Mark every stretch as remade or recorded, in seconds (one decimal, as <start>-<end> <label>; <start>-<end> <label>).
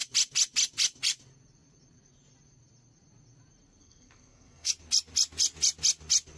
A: 0.0-3.8 recorded; 3.8-4.7 remade; 4.7-6.4 recorded